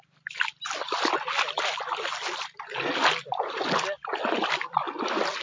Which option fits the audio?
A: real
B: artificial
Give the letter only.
A